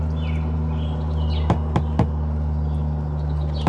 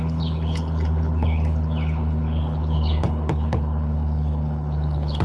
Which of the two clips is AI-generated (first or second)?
second